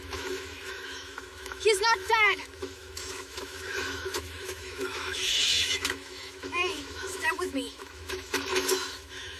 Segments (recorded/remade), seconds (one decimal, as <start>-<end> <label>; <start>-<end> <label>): 0.0-9.4 remade